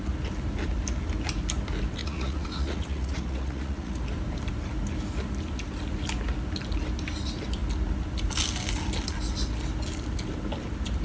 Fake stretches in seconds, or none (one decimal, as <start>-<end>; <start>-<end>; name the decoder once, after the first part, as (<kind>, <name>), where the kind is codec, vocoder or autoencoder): 2.0-4.0 (vocoder, Vocos)